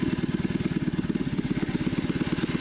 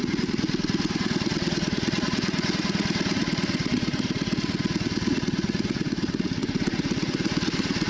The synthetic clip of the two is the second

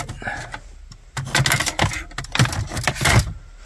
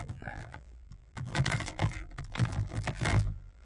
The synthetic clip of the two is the second